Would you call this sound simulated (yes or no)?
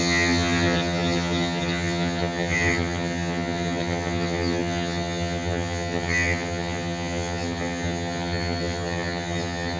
yes